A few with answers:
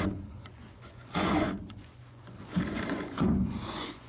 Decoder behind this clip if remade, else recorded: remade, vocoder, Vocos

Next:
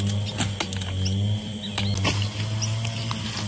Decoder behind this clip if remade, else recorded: recorded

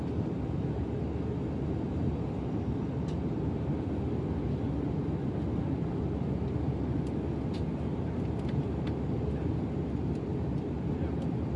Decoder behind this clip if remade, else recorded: recorded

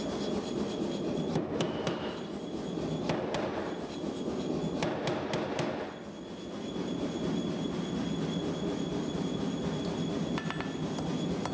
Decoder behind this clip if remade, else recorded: recorded